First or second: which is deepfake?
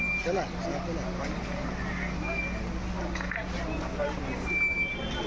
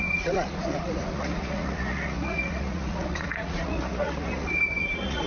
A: second